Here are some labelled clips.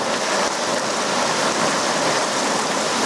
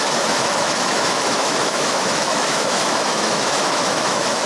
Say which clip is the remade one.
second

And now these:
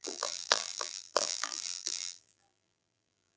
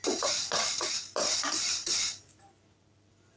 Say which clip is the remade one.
first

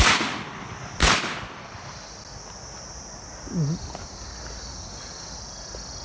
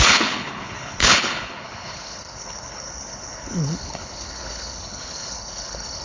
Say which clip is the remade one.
second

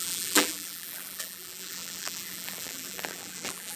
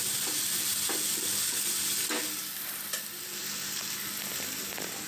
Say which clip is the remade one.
first